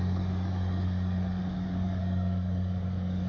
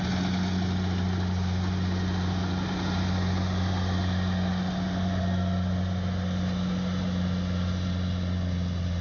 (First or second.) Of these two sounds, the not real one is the first